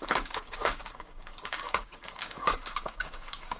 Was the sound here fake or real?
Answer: fake